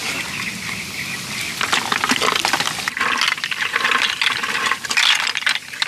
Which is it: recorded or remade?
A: recorded